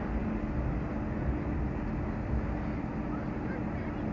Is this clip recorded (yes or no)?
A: yes